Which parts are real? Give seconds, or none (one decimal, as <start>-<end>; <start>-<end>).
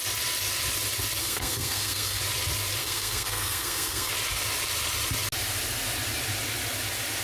0.0-1.2; 2.2-2.8; 4.1-7.2